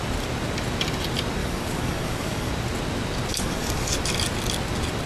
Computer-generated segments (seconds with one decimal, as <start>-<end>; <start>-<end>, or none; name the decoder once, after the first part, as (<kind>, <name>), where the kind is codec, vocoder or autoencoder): 1.4-2.5 (codec, DAC); 3.3-3.9

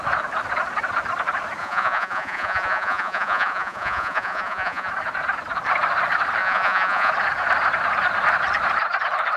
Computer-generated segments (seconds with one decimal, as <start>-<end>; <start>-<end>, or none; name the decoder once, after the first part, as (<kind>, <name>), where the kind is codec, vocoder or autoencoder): 1.6-4.9 (vocoder, Vocos); 6.4-7.1

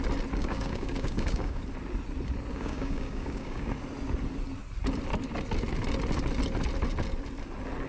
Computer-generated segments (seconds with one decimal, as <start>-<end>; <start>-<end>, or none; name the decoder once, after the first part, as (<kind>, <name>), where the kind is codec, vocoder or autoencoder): 0.4-1.6 (codec, DAC); 2.5-3.7